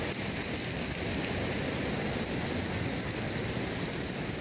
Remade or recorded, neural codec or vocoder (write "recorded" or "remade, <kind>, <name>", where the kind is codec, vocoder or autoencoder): recorded